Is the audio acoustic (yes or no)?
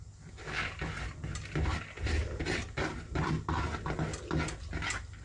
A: yes